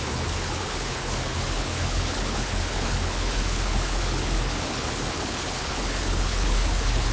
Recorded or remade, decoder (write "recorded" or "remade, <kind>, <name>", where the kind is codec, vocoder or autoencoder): remade, codec, HILCodec